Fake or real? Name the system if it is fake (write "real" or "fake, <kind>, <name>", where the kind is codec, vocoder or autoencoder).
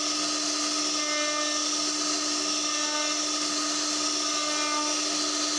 real